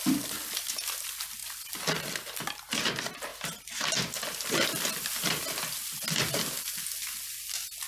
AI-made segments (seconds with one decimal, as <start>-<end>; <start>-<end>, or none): none